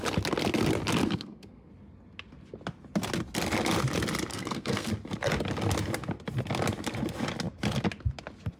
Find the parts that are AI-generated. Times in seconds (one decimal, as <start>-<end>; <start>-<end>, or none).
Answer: 1.0-1.7; 4.3-4.9